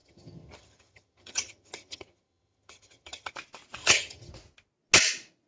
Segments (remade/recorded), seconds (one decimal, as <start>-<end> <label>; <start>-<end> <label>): 0.0-3.3 remade; 3.3-3.8 recorded; 3.8-4.3 remade; 4.3-5.5 recorded